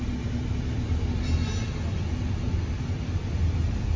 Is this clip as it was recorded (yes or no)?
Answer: yes